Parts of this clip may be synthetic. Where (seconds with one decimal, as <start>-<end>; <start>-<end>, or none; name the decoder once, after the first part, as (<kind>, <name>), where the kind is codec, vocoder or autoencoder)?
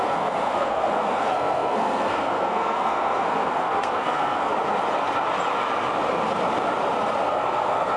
0.0-4.5 (codec, SNAC); 7.3-8.0